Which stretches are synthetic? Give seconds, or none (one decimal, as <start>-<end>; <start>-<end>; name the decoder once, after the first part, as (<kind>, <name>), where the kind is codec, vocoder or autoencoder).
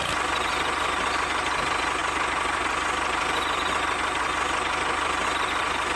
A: none